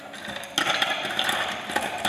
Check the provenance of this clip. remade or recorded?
recorded